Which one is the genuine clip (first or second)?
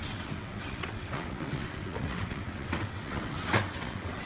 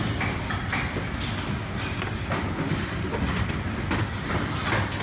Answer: second